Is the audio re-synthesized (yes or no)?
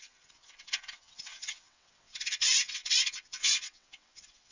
yes